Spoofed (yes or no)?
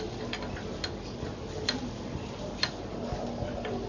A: no